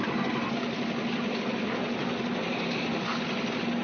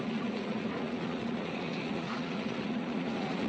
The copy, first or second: second